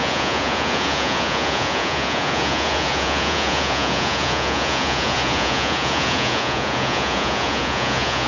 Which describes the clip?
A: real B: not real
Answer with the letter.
B